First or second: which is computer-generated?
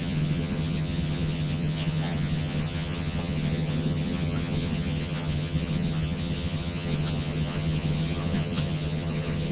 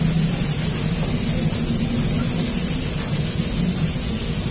first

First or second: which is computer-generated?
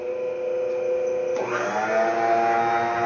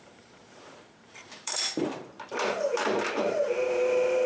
second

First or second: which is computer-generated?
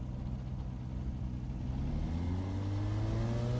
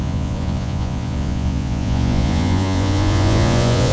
second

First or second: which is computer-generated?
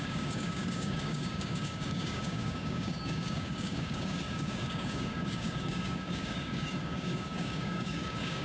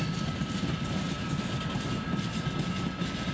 first